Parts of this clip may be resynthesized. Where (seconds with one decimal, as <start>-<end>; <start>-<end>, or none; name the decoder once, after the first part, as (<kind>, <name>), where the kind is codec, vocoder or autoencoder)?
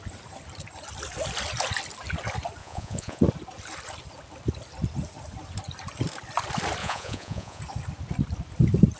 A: 2.6-3.2 (vocoder, Vocos); 6.8-7.6